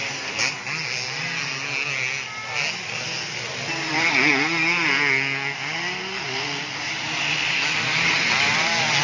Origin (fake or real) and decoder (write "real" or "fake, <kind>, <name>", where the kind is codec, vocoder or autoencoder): real